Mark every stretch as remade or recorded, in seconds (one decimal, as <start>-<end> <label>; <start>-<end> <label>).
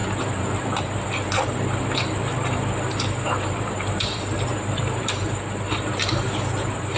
0.0-7.0 remade